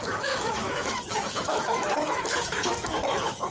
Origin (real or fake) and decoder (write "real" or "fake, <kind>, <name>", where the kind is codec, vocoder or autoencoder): fake, autoencoder, DAC-VAE